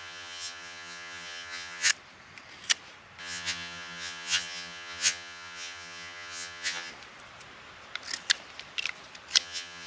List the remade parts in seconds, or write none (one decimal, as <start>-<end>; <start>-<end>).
0.0-1.9; 3.2-6.9; 9.4-9.9